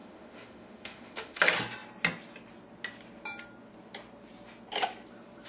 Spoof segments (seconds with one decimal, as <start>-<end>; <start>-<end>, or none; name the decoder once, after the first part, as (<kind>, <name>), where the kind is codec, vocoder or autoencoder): 0.0-1.4 (autoencoder, DAC-VAE)